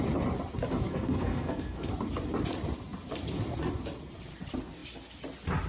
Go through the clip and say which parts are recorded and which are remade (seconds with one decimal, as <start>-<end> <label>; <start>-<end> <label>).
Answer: 0.0-0.9 recorded; 0.9-1.9 remade; 1.9-5.7 recorded

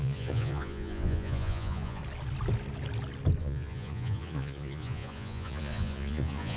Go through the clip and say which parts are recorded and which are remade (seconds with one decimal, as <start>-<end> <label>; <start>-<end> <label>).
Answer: 0.0-2.0 remade; 2.0-3.4 recorded; 3.4-6.6 remade

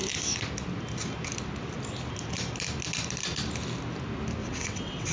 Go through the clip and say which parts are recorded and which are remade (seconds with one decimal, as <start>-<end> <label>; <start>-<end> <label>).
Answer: 0.0-4.4 recorded; 4.4-5.1 remade

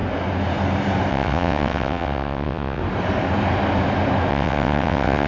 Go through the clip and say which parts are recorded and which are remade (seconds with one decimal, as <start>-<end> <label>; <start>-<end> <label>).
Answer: 0.0-1.1 recorded; 1.1-2.8 remade; 2.8-4.3 recorded; 4.3-5.3 remade

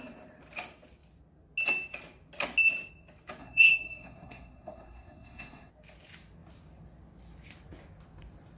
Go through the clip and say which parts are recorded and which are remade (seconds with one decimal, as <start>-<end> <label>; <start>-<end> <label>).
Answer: 0.0-3.4 recorded; 3.4-5.7 remade; 5.7-8.6 recorded

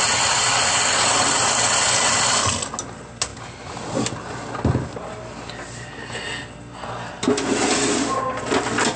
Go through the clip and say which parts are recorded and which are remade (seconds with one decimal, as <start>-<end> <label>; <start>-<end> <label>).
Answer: 0.0-9.0 recorded

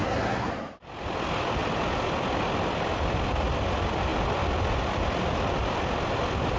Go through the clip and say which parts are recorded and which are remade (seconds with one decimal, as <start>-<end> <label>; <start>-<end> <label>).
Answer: 0.0-0.5 remade; 0.5-6.6 recorded

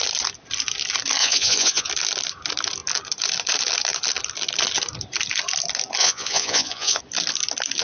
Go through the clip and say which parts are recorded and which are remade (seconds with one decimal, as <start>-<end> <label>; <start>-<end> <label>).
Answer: 0.0-1.2 recorded; 1.2-1.9 remade; 1.9-6.0 recorded; 6.0-7.0 remade; 7.0-7.8 recorded